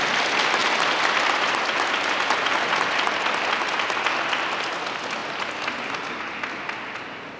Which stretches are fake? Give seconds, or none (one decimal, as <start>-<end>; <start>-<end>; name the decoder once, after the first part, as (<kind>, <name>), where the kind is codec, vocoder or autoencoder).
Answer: none